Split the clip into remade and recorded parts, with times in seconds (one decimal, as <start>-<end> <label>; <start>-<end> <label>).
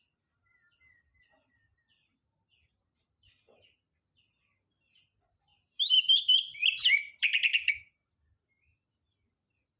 0.0-9.8 remade